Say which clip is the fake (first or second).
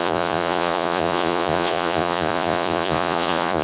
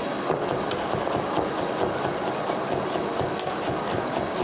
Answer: first